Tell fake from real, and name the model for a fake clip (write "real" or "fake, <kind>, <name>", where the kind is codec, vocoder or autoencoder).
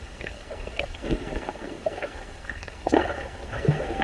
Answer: fake, codec, SNAC